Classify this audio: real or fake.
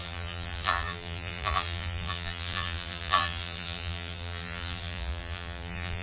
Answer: fake